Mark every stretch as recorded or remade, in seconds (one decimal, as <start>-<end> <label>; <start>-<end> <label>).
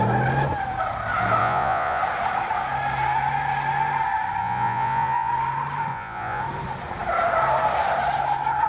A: 0.0-1.4 recorded; 1.4-2.0 remade; 2.0-4.4 recorded; 4.4-5.3 remade; 5.3-5.9 recorded; 5.9-6.4 remade; 6.4-8.7 recorded